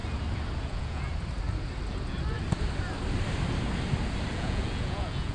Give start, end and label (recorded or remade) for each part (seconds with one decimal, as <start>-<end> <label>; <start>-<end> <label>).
0.0-0.6 recorded; 0.6-1.1 remade; 1.1-4.3 recorded; 4.3-5.3 remade